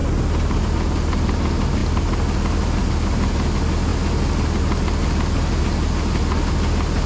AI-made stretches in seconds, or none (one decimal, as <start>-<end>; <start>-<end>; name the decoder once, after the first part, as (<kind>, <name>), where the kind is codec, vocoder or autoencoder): none